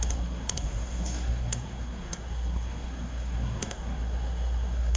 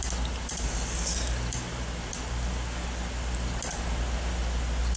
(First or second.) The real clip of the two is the second